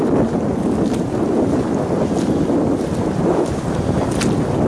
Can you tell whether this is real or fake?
real